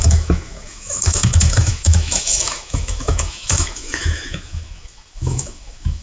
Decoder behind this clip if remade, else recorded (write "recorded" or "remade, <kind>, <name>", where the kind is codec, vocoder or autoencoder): remade, autoencoder, DAC-VAE